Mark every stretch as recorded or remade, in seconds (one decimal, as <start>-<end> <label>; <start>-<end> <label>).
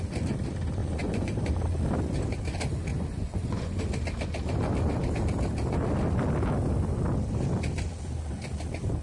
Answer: 0.0-0.8 recorded; 0.8-1.5 remade; 1.5-2.9 recorded; 2.9-3.8 remade; 3.8-9.0 recorded